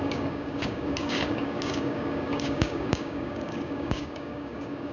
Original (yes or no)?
no